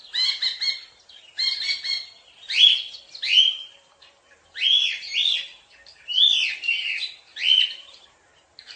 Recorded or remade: recorded